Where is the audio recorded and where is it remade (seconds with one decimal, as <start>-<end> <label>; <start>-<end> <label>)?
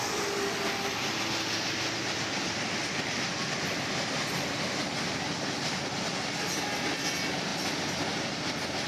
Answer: 0.0-8.9 recorded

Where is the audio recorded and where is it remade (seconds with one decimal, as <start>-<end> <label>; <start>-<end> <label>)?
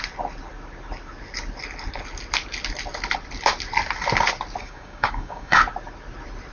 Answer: 0.0-4.6 recorded; 4.6-5.6 remade; 5.6-6.5 recorded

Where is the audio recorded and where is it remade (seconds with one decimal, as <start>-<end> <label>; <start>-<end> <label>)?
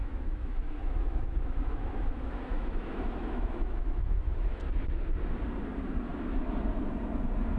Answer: 0.0-4.6 remade; 4.6-7.6 recorded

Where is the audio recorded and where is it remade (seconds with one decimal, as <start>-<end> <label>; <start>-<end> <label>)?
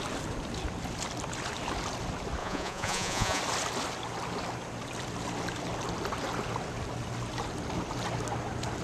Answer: 0.0-2.4 recorded; 2.4-3.4 remade; 3.4-8.8 recorded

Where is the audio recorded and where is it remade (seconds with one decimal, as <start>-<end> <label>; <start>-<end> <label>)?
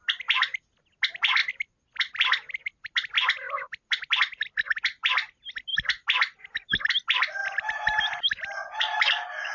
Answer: 0.0-9.5 recorded